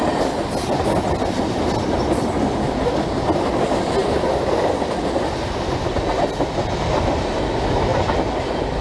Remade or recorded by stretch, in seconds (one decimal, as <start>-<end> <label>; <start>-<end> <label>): 0.0-8.8 recorded